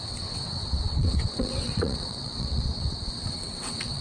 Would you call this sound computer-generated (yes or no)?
yes